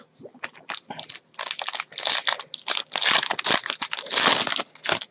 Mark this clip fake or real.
real